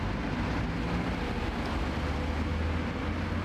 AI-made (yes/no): no